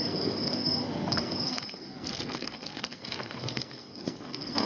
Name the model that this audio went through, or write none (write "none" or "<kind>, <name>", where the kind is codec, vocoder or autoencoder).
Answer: codec, SNAC